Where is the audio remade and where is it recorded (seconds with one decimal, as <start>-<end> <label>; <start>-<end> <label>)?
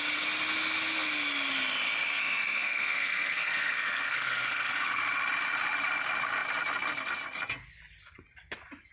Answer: 0.0-2.1 recorded; 2.1-5.0 remade; 5.0-8.9 recorded